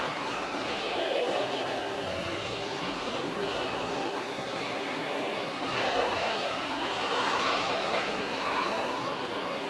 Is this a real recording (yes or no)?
no